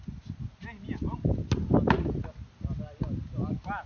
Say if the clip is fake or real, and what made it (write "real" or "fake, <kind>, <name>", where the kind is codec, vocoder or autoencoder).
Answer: real